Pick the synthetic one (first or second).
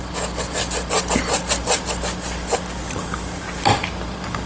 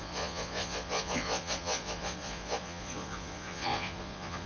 second